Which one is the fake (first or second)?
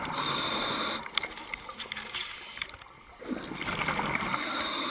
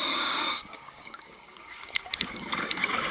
second